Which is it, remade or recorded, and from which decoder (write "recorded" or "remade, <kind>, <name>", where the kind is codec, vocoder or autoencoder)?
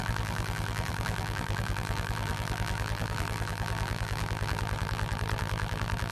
remade, vocoder, BigVGAN v2